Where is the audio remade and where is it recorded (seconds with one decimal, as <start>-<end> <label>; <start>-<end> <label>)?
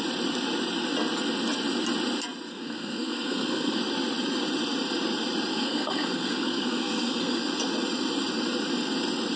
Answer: 0.0-2.5 recorded; 2.5-3.8 remade; 3.8-5.5 recorded; 5.5-7.4 remade; 7.4-9.4 recorded